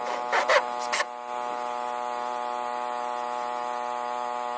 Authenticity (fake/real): real